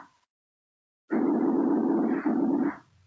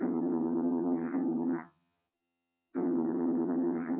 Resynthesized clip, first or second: second